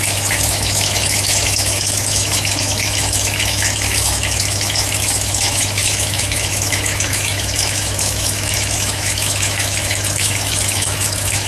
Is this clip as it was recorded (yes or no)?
no